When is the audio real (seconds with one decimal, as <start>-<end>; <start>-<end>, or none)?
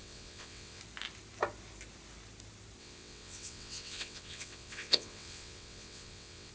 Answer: 0.8-2.8